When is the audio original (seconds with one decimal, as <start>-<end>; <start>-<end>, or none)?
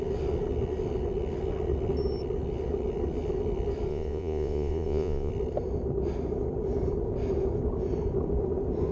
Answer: 0.0-3.9; 5.3-8.9